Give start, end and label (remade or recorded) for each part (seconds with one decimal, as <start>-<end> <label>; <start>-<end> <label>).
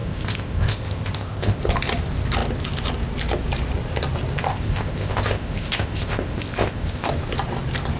0.0-1.6 remade; 1.6-4.5 recorded; 4.5-7.1 remade; 7.1-8.0 recorded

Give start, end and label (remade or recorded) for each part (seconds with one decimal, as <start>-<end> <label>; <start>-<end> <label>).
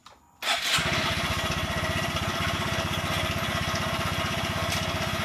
0.0-5.2 recorded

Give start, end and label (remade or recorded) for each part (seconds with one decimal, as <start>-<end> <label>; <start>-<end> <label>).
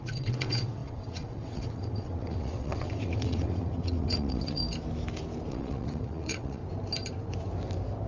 0.0-4.6 remade; 4.6-5.5 recorded; 5.5-6.6 remade; 6.6-8.1 recorded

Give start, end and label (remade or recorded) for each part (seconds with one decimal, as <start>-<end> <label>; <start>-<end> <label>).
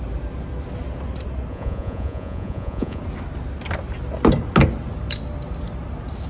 0.0-1.5 recorded; 1.5-3.0 remade; 3.0-6.3 recorded